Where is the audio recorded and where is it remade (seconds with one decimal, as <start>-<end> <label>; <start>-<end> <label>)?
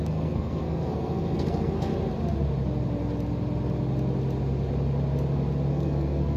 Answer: 0.0-1.9 remade; 1.9-5.7 recorded; 5.7-6.4 remade